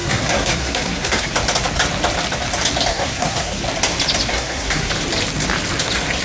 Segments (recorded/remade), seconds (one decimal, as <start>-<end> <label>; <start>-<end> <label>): 0.0-1.3 remade; 1.3-2.9 recorded; 2.9-3.6 remade; 3.6-4.3 recorded; 4.3-4.9 remade; 4.9-6.2 recorded